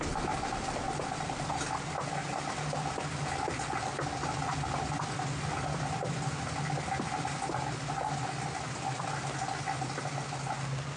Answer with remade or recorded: recorded